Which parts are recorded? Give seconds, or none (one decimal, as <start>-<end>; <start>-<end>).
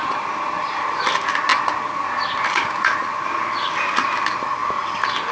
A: 0.0-5.3